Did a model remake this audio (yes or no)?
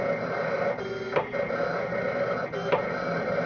no